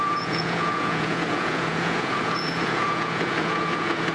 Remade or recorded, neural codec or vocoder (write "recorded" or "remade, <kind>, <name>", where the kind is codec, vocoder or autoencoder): remade, vocoder, Vocos